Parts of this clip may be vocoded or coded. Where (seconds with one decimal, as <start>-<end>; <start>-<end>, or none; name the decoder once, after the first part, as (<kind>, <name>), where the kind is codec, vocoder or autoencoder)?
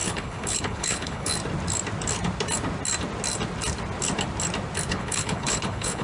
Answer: 0.0-1.3 (codec, HILCodec); 4.9-6.0